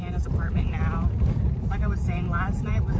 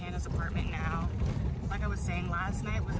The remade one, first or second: first